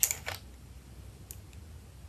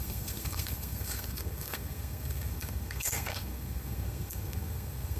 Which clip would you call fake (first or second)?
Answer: second